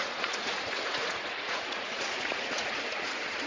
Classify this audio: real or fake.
fake